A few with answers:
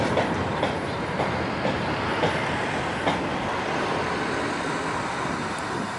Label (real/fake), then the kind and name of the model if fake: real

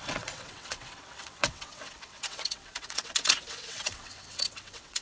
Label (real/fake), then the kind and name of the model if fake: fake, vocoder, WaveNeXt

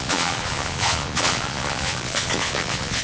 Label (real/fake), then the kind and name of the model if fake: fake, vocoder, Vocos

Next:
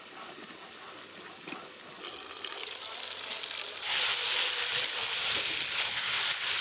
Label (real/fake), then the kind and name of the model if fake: real